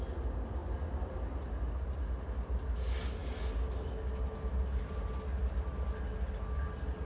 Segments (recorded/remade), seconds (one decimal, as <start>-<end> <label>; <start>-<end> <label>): 0.0-7.1 recorded